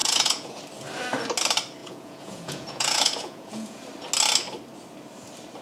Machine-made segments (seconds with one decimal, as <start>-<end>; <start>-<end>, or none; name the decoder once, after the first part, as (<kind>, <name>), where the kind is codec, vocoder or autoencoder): 0.0-0.6 (vocoder, Vocos); 1.8-3.8